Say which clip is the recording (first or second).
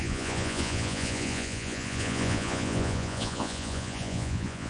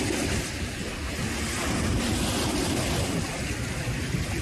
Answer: second